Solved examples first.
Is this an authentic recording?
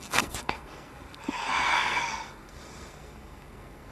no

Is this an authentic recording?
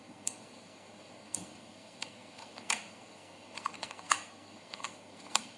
no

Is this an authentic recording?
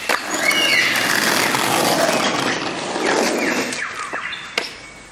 yes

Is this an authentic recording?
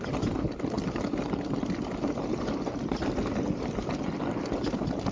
yes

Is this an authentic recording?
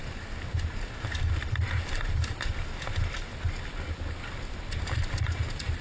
yes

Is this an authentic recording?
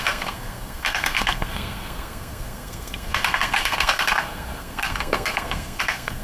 no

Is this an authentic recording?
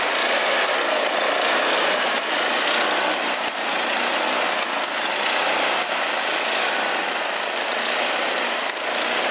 yes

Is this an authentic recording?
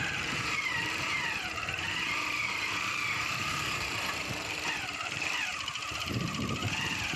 no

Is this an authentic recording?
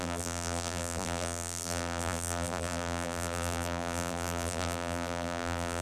no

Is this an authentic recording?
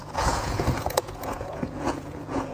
no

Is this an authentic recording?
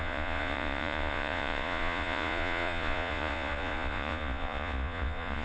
no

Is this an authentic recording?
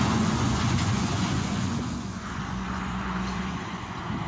no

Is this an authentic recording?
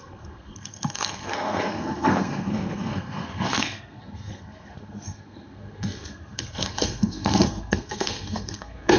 no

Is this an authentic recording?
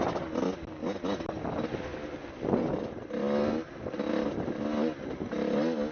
yes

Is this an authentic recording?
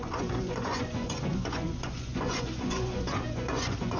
no